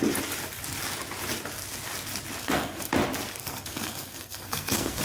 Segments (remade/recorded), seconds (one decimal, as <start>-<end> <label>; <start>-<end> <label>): 0.0-2.4 recorded; 2.4-2.9 remade; 2.9-3.4 recorded; 3.4-5.0 remade